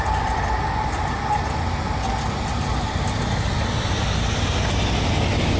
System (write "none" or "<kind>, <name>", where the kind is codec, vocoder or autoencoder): none